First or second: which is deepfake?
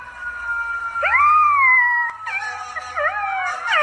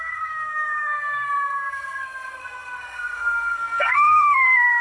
second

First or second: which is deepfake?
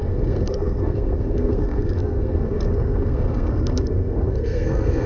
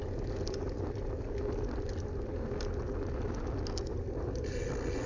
first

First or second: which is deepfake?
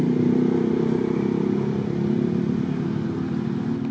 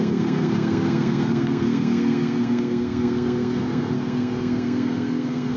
second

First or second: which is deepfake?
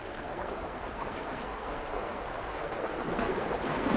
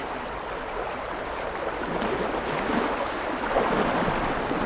first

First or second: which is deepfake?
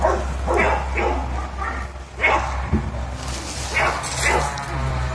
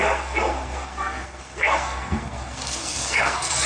second